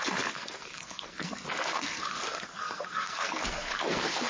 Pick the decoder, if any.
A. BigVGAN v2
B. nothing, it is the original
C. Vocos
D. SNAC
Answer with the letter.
D